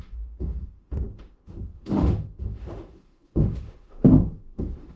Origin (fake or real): fake